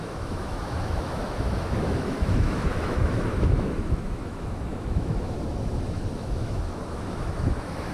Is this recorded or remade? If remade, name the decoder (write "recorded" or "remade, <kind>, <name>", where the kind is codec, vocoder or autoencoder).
remade, autoencoder, DAC-VAE